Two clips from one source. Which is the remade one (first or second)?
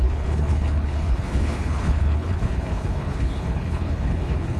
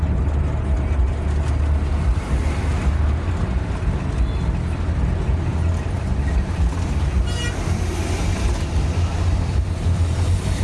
first